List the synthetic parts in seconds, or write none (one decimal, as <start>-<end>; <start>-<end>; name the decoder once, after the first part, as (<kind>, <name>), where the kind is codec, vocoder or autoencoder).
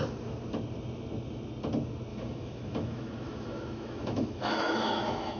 2.1-5.4 (autoencoder, DAC-VAE)